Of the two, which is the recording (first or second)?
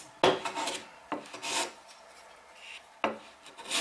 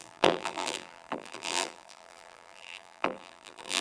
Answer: first